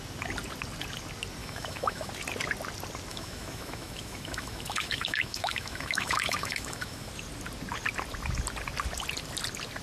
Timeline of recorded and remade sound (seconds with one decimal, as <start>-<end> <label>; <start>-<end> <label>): 0.0-1.4 recorded; 1.4-2.1 remade; 2.1-3.1 recorded; 3.1-7.1 remade; 7.1-9.8 recorded

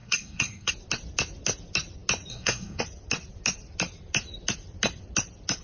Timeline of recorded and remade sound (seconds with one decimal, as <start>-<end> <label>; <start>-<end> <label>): 0.0-0.7 remade; 0.7-2.3 recorded; 2.3-2.8 remade; 2.8-5.6 recorded

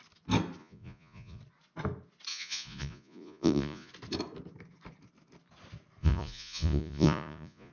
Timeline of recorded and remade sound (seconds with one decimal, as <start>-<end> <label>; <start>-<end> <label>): 0.0-0.6 recorded; 0.6-1.4 remade; 1.4-2.3 recorded; 2.3-3.9 remade; 3.9-6.0 recorded; 6.0-7.7 remade